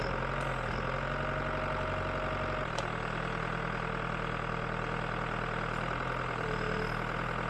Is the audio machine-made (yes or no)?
no